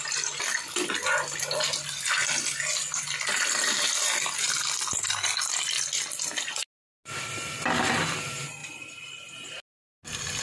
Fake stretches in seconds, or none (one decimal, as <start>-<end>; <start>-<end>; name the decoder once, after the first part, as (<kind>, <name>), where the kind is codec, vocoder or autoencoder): none